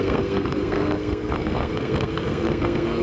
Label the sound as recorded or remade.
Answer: remade